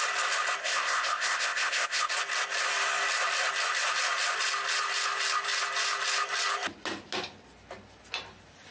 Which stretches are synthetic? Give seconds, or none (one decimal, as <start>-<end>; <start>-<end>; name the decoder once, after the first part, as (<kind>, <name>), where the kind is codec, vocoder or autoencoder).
0.6-2.1 (codec, ZipCodec)